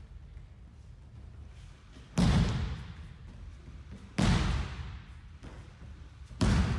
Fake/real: real